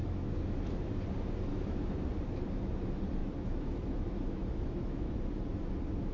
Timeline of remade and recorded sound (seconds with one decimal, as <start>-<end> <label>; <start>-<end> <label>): 0.0-0.9 remade; 0.9-1.5 recorded; 1.5-2.1 remade; 2.1-3.2 recorded; 3.2-5.3 remade; 5.3-6.1 recorded